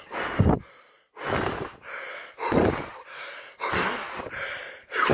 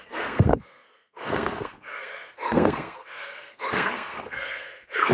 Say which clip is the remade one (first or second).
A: second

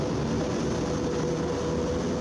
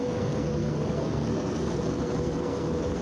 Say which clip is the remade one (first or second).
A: second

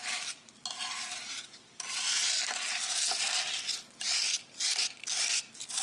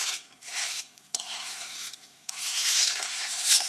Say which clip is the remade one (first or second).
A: second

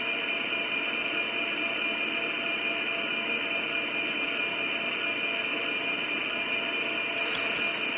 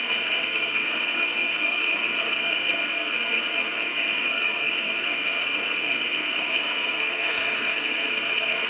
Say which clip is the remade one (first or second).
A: second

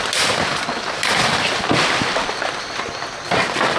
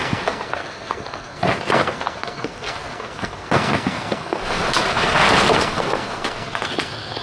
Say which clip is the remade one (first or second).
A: second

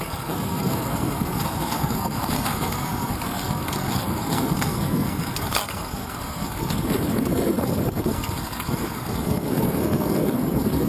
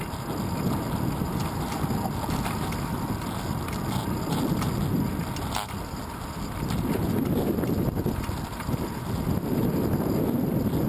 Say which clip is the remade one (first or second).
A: first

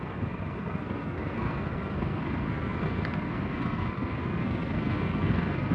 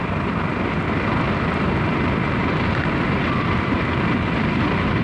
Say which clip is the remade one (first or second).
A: first